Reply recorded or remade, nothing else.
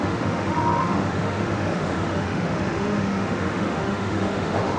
remade